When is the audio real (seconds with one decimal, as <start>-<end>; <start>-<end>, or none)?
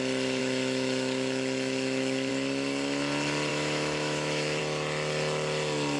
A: 0.0-0.4; 2.3-3.5; 4.6-6.0